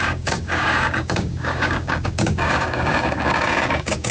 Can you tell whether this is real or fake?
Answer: fake